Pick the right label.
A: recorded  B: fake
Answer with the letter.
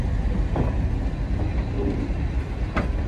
A